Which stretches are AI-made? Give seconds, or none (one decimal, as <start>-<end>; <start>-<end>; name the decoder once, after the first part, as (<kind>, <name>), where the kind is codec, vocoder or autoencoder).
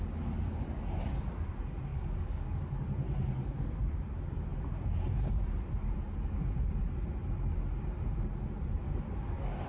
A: 1.9-2.6 (codec, DAC)